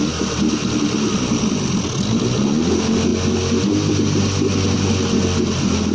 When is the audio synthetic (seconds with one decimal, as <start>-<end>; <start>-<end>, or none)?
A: none

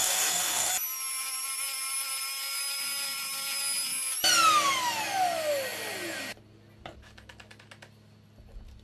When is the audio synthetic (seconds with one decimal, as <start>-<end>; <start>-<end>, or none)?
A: 0.0-0.7

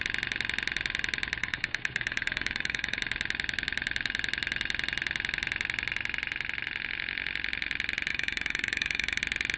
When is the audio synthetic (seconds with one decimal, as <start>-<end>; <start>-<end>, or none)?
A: 1.4-3.0; 8.1-9.2

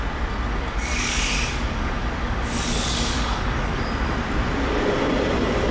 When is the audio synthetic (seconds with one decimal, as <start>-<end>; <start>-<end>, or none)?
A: 0.5-3.9

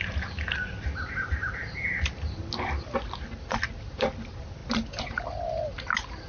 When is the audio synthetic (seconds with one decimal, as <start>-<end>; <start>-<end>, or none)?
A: none

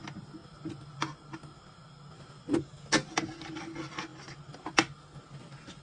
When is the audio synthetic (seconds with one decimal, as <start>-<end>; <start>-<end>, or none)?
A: none